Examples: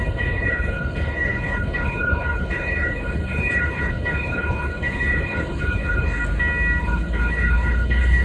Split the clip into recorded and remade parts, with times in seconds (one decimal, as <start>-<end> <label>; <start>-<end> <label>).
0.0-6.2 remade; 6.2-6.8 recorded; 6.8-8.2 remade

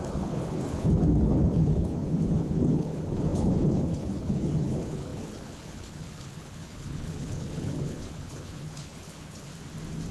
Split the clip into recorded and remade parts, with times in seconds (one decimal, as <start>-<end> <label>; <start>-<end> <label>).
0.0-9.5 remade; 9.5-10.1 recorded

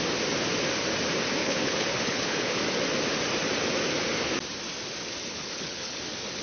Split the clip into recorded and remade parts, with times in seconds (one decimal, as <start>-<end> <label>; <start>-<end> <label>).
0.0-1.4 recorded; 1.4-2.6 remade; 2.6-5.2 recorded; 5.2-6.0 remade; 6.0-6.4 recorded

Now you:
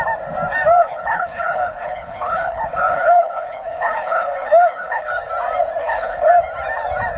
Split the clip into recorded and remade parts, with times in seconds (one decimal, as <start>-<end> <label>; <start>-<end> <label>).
0.0-0.8 recorded; 0.8-5.1 remade; 5.1-5.8 recorded; 5.8-6.3 remade; 6.3-7.2 recorded